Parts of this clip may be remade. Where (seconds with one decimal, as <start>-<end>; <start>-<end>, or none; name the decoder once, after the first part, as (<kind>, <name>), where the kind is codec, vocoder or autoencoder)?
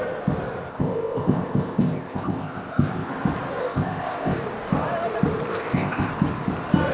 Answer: 0.7-3.1 (codec, ZipCodec); 3.6-4.4; 5.5-6.1